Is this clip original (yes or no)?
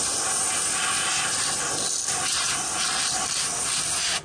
yes